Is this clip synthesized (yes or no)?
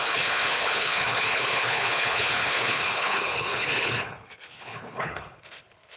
yes